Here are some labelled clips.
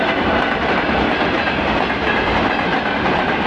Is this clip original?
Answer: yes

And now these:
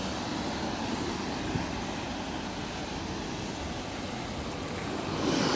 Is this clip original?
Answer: yes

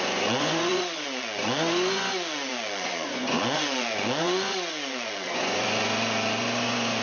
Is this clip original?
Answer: no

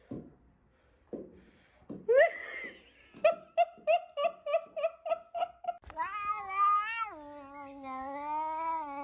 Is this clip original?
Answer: yes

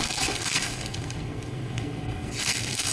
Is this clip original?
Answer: no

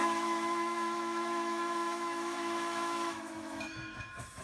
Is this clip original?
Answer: no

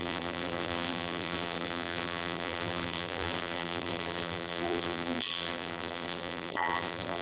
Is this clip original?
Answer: no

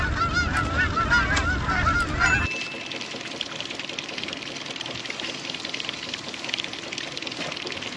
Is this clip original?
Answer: yes